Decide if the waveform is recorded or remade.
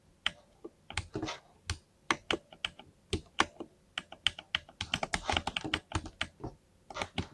recorded